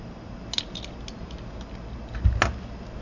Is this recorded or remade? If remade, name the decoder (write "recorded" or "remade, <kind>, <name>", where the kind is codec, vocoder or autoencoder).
recorded